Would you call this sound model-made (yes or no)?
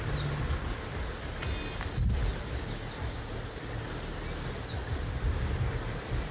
no